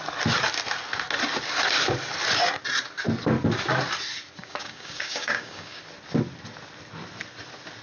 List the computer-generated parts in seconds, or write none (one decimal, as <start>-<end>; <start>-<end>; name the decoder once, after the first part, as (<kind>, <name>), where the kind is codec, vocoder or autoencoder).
4.4-5.8 (codec, DAC)